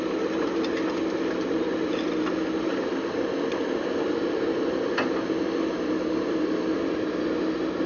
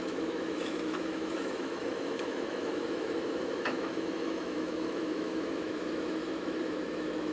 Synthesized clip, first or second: second